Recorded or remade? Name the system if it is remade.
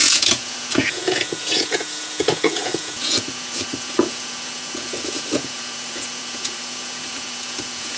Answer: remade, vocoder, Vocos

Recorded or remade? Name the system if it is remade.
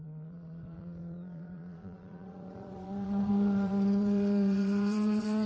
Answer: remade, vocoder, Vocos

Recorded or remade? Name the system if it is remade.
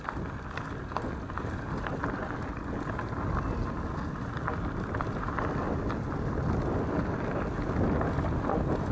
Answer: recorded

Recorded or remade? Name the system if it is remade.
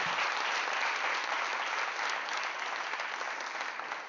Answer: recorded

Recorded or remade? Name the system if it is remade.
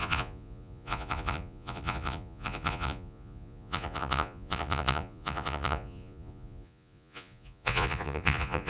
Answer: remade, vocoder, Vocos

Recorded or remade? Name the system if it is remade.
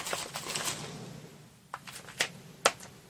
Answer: recorded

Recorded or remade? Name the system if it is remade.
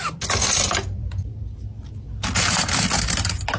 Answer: recorded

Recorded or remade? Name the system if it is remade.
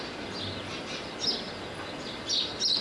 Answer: recorded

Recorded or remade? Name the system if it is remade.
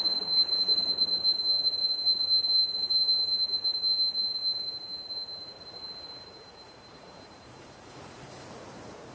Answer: remade, vocoder, Vocos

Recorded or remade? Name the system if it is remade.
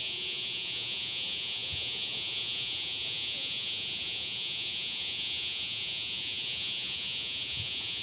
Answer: remade, vocoder, Vocos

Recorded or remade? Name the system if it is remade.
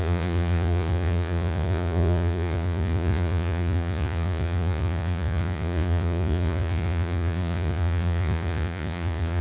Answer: remade, vocoder, Vocos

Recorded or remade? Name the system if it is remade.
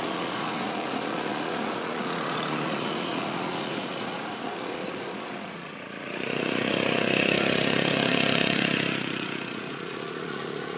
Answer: remade, vocoder, Vocos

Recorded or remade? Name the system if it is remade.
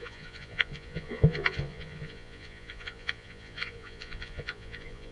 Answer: remade, vocoder, Vocos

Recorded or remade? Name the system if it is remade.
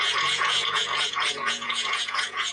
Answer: remade, vocoder, Vocos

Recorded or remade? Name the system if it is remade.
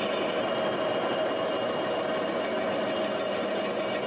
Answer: recorded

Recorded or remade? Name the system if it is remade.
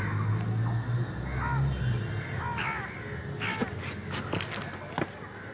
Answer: recorded